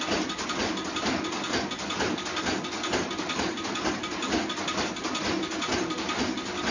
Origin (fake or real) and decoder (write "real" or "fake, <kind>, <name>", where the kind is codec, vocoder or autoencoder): real